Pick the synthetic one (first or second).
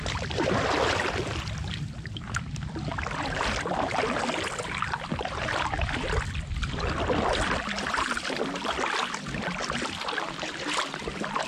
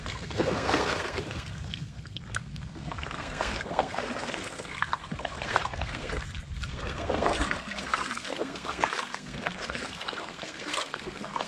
second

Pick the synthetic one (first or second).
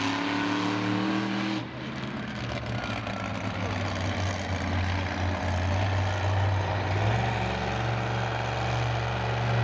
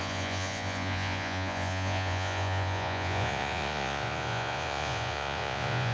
second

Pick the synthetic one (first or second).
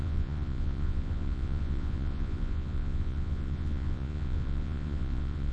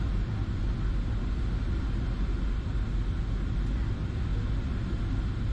first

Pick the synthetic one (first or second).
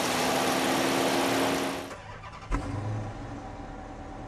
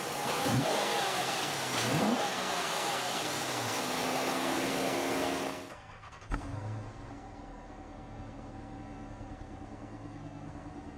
second